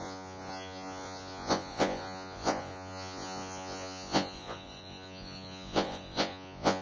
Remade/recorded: remade